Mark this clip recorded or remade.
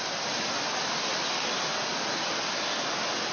recorded